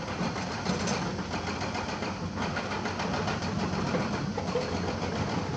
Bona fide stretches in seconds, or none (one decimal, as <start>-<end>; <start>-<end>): 0.0-5.6

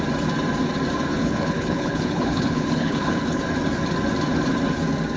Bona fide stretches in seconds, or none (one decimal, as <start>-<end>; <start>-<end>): 0.0-1.1; 3.4-5.2

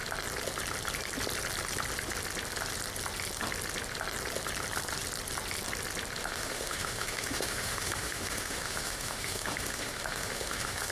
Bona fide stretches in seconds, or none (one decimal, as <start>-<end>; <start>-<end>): 0.0-6.2

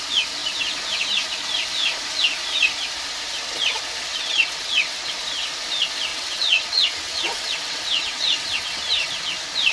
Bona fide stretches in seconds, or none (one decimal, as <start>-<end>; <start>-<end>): 0.0-4.1; 5.1-6.1; 9.1-9.7